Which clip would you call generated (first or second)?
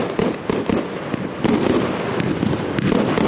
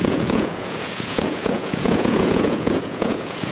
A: second